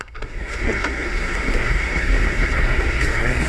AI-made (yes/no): yes